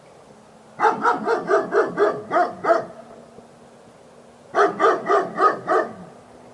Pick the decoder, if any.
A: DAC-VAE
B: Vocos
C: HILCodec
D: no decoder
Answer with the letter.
D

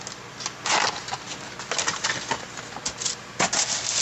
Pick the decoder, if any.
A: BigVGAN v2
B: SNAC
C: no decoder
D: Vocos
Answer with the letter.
C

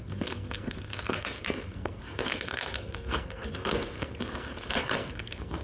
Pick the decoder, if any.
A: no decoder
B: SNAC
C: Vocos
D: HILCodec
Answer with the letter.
B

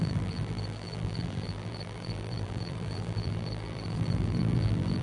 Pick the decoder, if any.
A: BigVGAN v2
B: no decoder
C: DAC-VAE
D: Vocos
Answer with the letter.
A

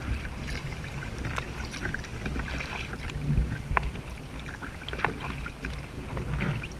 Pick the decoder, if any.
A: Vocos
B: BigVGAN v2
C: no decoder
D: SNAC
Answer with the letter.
C